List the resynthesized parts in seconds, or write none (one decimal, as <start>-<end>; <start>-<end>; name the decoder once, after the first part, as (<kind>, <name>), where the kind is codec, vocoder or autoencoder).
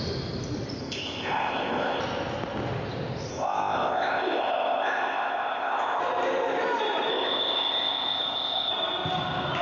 0.8-2.0 (codec, ZipCodec); 3.3-6.0; 7.1-8.7